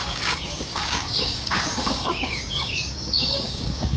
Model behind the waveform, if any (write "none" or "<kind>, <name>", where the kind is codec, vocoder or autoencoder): codec, DAC